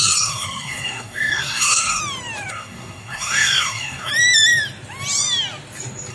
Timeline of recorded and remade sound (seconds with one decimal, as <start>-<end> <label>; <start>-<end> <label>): 0.0-2.0 remade; 2.0-2.5 recorded; 2.5-4.1 remade; 4.1-6.1 recorded